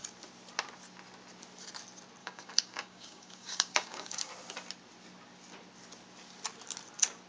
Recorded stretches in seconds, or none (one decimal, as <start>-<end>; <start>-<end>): 0.0-2.2; 4.3-7.3